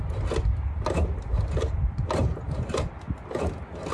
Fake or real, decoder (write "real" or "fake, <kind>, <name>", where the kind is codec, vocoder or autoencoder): real